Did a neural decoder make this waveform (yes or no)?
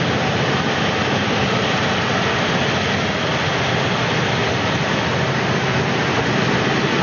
no